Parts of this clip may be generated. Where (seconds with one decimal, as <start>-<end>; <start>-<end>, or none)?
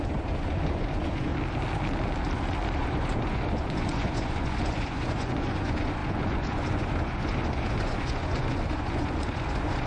0.0-1.3; 2.8-9.9